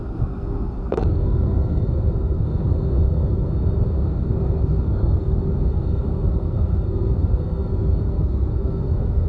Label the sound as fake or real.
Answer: fake